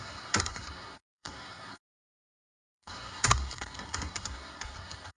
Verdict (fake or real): fake